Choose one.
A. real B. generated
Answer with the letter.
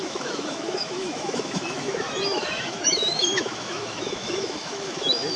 B